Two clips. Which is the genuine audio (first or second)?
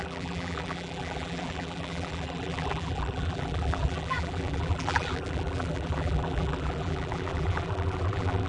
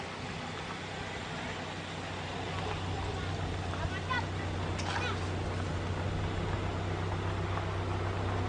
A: second